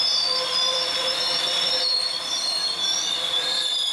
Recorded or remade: remade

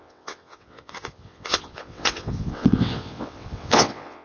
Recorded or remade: remade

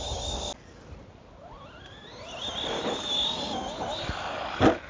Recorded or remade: recorded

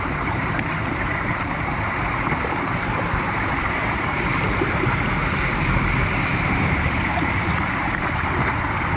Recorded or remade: remade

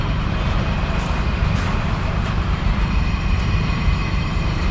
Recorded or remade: remade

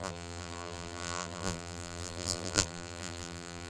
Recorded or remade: remade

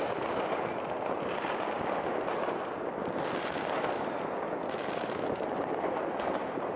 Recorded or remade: recorded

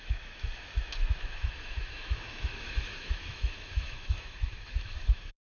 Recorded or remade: remade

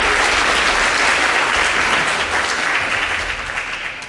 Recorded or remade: recorded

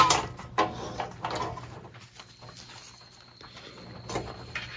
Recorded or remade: recorded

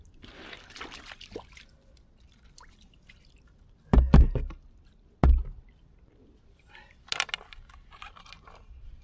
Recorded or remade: recorded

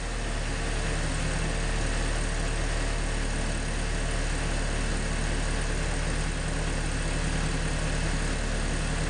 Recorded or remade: recorded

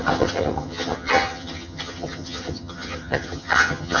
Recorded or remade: remade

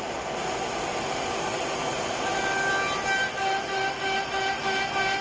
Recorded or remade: recorded